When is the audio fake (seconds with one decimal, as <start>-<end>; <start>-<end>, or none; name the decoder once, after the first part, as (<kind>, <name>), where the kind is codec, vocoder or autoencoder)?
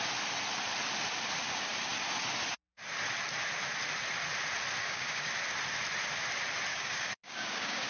4.8-5.3 (codec, DAC); 6.7-7.9